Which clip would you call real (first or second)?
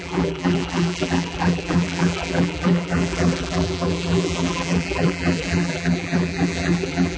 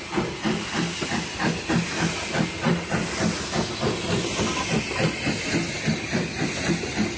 second